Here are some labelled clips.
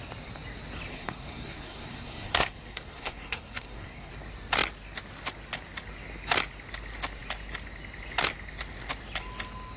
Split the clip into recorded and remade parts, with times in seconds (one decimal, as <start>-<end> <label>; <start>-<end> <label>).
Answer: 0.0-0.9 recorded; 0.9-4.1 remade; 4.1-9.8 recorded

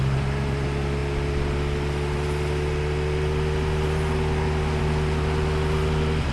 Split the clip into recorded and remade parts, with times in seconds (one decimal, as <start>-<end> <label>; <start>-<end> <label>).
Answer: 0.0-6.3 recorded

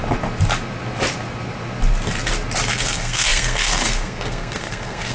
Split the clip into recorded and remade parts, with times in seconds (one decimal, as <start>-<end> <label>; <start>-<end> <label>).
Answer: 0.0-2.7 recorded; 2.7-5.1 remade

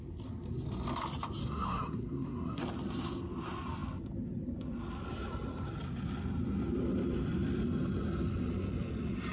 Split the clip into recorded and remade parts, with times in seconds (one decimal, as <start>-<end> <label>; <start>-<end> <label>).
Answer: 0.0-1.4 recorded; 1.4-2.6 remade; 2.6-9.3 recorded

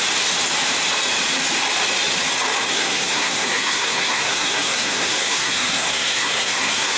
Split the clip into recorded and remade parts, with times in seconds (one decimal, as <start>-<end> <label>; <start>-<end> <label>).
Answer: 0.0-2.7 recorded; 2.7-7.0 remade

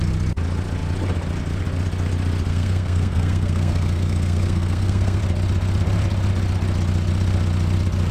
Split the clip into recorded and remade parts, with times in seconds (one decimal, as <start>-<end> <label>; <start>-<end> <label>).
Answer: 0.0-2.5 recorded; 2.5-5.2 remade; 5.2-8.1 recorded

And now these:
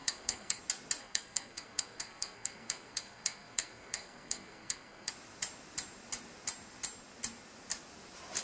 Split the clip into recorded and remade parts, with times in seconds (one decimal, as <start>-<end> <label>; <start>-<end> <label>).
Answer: 0.0-0.6 remade; 0.6-1.0 recorded; 1.0-5.1 remade; 5.1-8.4 recorded